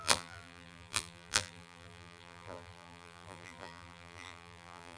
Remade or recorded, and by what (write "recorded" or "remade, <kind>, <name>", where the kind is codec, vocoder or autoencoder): remade, vocoder, BigVGAN v2